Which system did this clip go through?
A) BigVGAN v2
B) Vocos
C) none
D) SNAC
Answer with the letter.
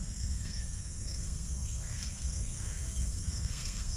D